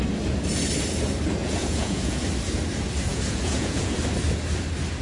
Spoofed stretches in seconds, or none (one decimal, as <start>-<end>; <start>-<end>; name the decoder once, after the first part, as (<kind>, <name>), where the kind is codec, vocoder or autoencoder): 1.4-2.2 (vocoder, Vocos); 3.1-4.0